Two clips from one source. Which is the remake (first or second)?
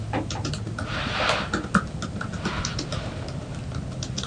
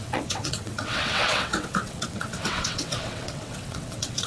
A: second